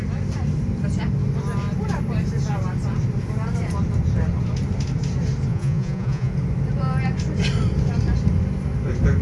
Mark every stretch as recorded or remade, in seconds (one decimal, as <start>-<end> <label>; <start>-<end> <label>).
0.0-5.5 recorded; 5.5-6.3 remade; 6.3-9.2 recorded